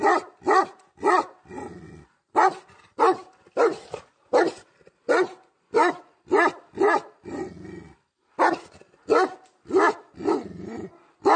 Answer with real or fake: real